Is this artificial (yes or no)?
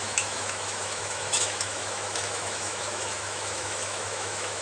yes